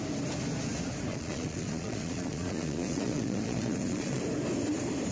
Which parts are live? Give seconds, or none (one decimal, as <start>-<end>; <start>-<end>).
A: 0.0-1.1; 4.2-5.1